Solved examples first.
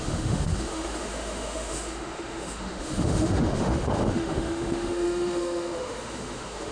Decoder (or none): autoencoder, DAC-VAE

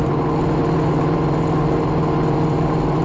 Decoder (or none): none